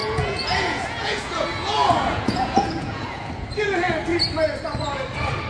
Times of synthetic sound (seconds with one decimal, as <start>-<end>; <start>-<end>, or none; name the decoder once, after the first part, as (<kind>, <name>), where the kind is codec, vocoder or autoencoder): 0.0-3.3 (vocoder, Vocos)